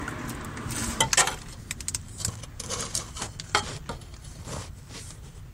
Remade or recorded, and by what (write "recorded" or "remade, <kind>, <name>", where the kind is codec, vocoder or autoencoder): recorded